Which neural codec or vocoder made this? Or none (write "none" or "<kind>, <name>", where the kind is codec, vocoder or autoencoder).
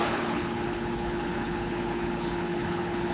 codec, HILCodec